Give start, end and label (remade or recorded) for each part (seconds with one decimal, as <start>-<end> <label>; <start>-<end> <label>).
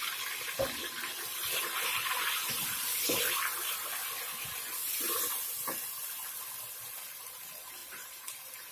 0.0-7.8 recorded; 7.8-8.7 remade